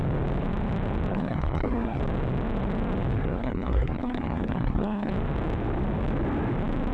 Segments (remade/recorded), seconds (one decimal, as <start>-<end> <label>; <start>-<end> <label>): 0.0-1.1 recorded; 1.1-2.0 remade; 2.0-3.2 recorded; 3.2-5.1 remade; 5.1-6.9 recorded